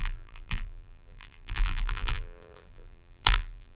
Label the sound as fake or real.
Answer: fake